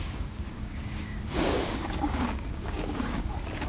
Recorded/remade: remade